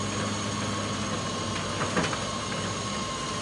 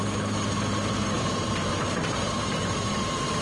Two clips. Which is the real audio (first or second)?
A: first